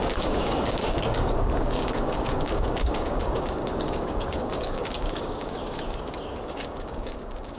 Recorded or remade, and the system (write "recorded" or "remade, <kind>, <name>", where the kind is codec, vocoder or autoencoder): remade, codec, DAC